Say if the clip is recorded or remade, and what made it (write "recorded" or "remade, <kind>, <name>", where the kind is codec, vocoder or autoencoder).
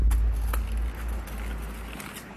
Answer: recorded